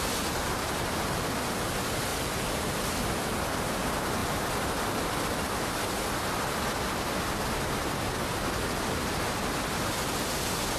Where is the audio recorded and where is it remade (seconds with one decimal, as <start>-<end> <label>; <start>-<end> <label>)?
0.0-10.8 recorded